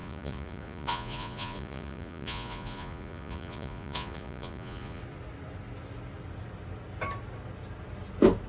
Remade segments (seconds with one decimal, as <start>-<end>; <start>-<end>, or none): 0.0-5.0